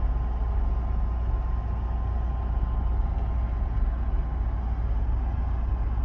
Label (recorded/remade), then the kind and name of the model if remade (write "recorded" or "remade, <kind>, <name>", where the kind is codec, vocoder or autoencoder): recorded